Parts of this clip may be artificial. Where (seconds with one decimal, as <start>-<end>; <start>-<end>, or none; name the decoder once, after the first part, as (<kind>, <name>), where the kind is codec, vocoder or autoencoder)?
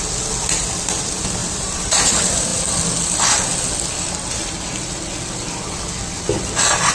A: 1.4-2.1 (vocoder, BigVGAN v2)